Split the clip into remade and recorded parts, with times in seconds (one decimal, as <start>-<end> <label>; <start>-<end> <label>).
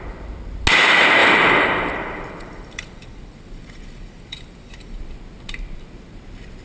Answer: 0.0-1.2 recorded; 1.2-5.0 remade; 5.0-6.6 recorded